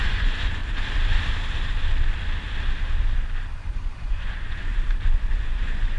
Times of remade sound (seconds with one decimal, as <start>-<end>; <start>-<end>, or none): 0.0-0.6; 3.7-4.7; 5.4-6.0